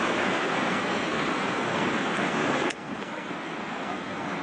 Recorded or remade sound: remade